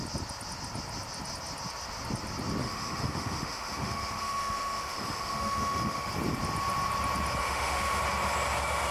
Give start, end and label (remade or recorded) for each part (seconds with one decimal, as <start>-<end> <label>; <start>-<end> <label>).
0.0-2.6 recorded; 2.6-6.1 remade; 6.1-7.4 recorded; 7.4-8.0 remade; 8.0-8.9 recorded